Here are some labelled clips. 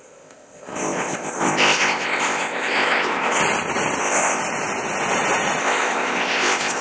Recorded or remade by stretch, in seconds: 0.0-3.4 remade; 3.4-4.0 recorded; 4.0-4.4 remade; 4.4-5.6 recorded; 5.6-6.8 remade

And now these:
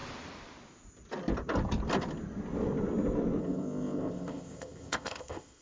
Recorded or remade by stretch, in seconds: 0.0-3.4 recorded; 3.4-5.6 remade